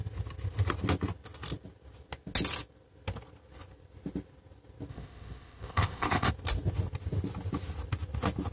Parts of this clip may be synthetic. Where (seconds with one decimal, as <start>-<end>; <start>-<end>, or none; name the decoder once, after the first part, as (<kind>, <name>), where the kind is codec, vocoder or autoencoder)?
4.9-6.3 (codec, ZipCodec)